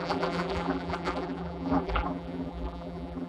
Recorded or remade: remade